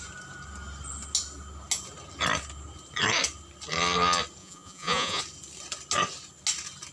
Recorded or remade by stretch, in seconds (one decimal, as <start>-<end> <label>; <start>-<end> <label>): 0.0-4.4 recorded; 4.4-5.2 remade; 5.2-6.9 recorded